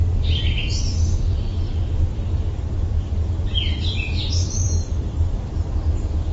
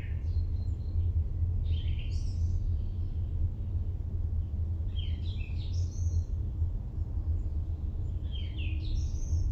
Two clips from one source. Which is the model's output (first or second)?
first